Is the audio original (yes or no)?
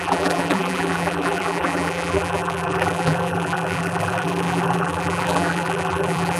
no